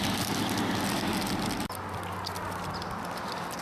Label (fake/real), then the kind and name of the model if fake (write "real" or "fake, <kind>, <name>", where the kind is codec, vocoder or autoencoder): real